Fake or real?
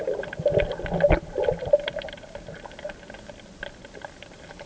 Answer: real